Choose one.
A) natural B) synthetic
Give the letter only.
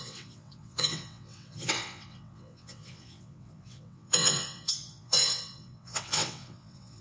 B